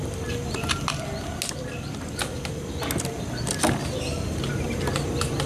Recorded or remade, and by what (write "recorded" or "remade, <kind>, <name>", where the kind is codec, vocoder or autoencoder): recorded